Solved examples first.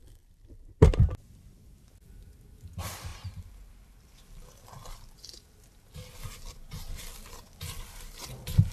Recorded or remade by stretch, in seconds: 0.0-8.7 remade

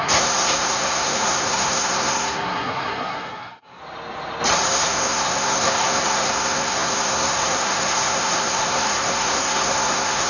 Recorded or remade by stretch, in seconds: 0.0-3.8 remade; 3.8-4.7 recorded; 4.7-10.3 remade

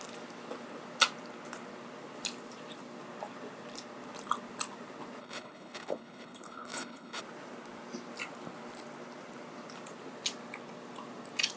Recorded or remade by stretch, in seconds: 0.0-5.2 recorded; 5.2-7.2 remade; 7.2-11.6 recorded

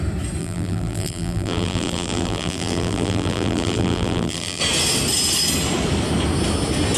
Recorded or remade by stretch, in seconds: 0.0-0.4 recorded; 0.4-4.6 remade; 4.6-7.0 recorded

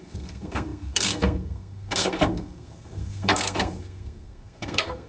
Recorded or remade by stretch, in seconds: 0.0-5.1 remade